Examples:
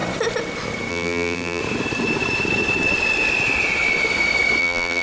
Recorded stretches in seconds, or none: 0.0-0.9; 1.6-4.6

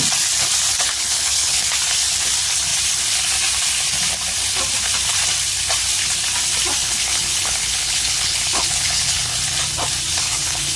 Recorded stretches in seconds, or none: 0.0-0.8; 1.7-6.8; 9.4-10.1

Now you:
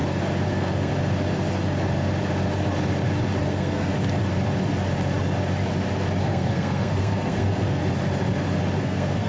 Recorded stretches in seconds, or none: 0.0-0.5; 0.9-3.4; 3.9-6.2; 7.8-8.8